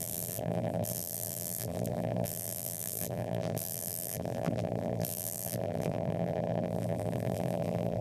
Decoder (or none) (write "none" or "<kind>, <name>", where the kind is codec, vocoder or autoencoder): vocoder, BigVGAN v2